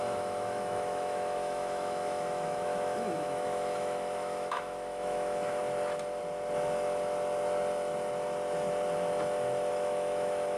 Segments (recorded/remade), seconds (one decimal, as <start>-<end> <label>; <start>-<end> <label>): 0.0-5.6 remade; 5.6-9.7 recorded; 9.7-10.6 remade